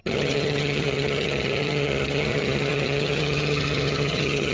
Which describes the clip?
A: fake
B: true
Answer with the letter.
A